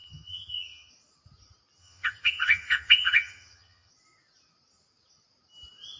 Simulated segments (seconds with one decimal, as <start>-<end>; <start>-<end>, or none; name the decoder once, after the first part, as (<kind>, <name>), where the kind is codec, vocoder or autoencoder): 0.0-0.9 (vocoder, HiFi-GAN); 1.8-3.9

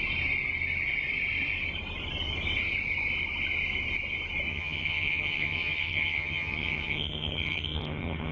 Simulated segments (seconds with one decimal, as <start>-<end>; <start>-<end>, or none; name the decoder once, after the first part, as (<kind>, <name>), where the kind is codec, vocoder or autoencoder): 4.5-8.3 (vocoder, HiFi-GAN)

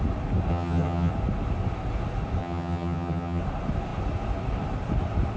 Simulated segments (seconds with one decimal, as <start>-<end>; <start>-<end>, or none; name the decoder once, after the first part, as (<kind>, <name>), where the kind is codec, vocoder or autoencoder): 0.5-1.1 (vocoder, HiFi-GAN); 2.4-3.4

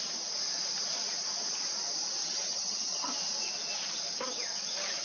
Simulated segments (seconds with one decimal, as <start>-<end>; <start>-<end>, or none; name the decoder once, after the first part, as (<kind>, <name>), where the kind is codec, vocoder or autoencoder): 2.2-3.1 (vocoder, HiFi-GAN)

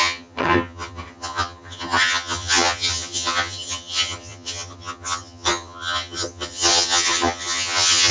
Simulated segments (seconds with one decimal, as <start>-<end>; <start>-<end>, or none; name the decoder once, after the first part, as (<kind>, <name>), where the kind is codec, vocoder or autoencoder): 0.0-8.1 (vocoder, HiFi-GAN)

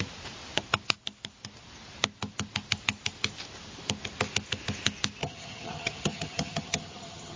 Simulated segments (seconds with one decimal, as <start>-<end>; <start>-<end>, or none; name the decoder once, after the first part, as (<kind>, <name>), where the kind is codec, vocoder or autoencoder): 5.2-7.4 (vocoder, HiFi-GAN)

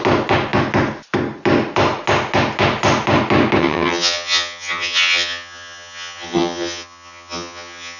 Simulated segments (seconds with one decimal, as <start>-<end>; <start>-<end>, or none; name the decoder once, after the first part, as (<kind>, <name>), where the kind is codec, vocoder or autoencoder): 3.6-8.0 (vocoder, HiFi-GAN)

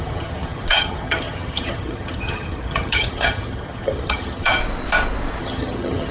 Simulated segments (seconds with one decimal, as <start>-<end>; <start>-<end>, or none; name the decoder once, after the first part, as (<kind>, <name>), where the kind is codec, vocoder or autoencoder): 0.0-4.6 (vocoder, HiFi-GAN); 5.4-6.1